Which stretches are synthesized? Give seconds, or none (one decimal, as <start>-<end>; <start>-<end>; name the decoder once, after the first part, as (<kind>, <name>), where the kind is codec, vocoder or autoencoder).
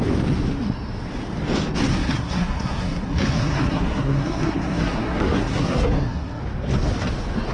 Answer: 1.9-6.4 (codec, SNAC)